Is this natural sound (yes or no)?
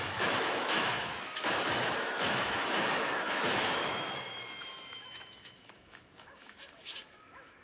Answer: no